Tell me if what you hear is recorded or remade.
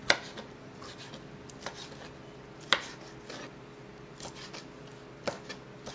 recorded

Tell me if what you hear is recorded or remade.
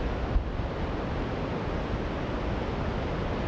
recorded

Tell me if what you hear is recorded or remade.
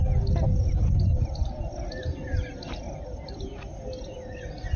recorded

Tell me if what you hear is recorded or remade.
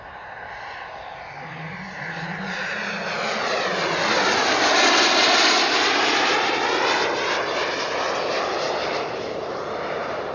recorded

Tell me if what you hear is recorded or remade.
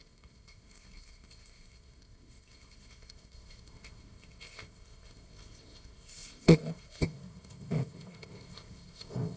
remade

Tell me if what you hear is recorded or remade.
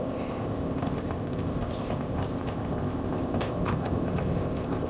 remade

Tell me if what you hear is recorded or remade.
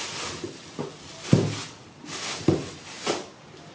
recorded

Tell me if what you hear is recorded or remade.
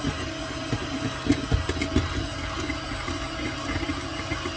recorded